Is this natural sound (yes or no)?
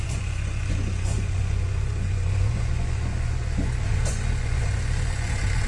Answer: no